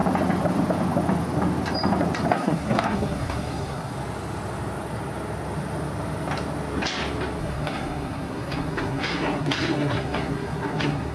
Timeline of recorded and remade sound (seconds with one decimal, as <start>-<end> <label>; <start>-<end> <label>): 0.0-2.3 recorded; 2.3-3.9 remade; 3.9-7.4 recorded; 7.4-11.1 remade